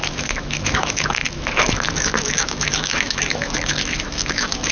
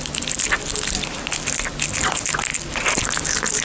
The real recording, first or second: second